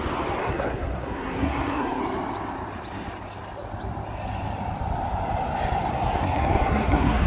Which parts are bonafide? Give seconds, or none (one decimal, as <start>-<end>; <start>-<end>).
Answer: 0.0-0.4; 2.0-5.9